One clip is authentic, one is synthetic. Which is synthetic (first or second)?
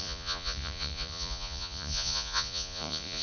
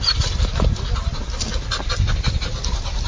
first